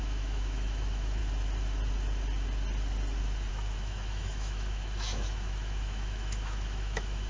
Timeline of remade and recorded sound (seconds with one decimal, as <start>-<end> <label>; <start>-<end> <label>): 0.0-1.2 remade; 1.2-3.5 recorded; 3.5-7.3 remade